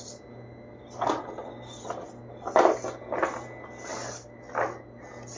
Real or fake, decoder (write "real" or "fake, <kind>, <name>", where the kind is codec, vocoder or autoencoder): real